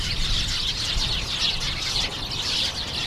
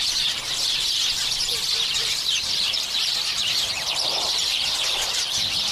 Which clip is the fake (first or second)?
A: second